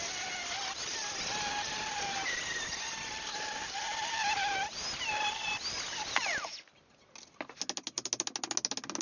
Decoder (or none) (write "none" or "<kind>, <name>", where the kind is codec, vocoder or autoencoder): none